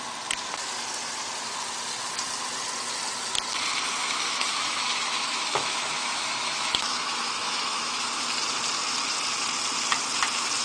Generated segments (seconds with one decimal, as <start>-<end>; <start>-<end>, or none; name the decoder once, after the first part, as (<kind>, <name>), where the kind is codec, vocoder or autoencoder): 4.0-8.2 (autoencoder, DAC-VAE)